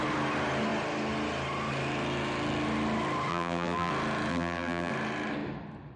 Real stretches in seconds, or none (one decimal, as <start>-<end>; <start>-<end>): 0.0-3.3; 3.9-4.3; 4.9-6.0